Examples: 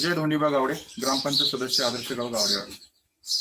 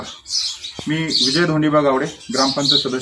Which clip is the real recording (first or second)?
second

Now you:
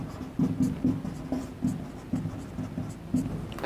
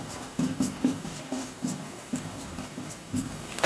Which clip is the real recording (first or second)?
first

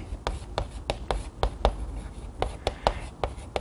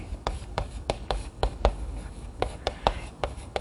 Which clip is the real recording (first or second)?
first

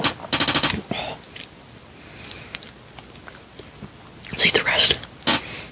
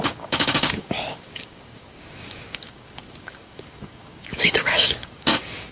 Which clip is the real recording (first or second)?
first